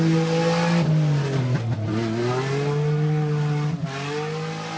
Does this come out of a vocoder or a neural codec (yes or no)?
no